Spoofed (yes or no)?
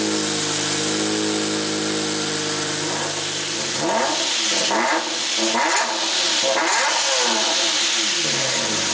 no